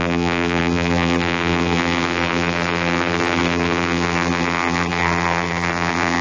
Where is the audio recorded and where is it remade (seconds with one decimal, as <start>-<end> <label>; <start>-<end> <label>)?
0.0-6.2 remade